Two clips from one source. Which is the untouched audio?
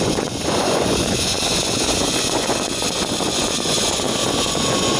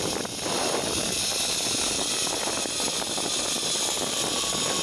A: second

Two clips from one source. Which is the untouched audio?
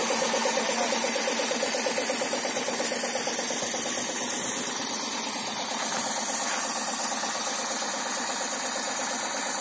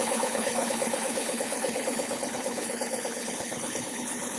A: first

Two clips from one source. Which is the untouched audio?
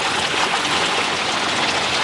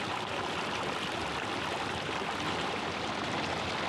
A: second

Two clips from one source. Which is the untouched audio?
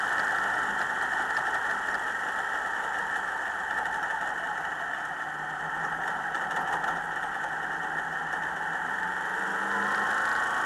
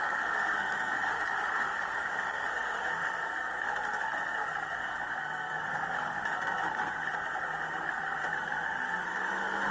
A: first